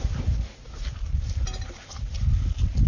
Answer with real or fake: real